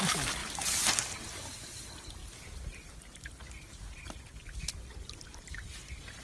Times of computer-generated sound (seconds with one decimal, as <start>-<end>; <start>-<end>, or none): none